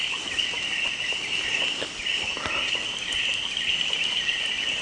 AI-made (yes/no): no